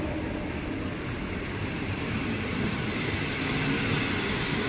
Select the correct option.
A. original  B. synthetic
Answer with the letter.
A